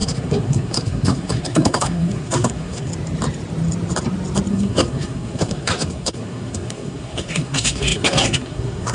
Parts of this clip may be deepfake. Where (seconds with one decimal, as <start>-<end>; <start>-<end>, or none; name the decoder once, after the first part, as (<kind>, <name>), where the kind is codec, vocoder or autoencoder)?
0.0-2.9 (codec, SNAC); 4.5-8.9